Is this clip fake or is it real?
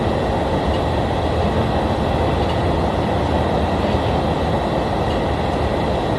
real